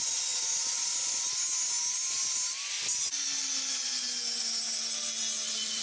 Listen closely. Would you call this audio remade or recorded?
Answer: recorded